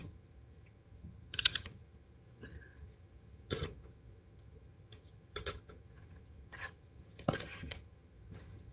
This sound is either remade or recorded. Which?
remade